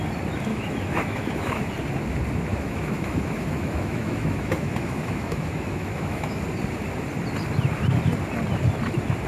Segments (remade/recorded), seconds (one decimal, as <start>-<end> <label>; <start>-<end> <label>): 0.0-0.5 recorded; 0.5-1.7 remade; 1.7-2.5 recorded; 2.5-6.4 remade; 6.4-9.3 recorded